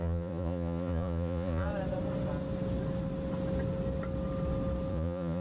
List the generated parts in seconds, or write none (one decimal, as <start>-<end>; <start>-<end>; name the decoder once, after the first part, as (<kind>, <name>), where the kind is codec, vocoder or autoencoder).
0.0-1.7 (vocoder, Vocos); 4.9-5.4